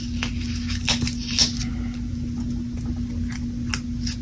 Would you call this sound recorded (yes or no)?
yes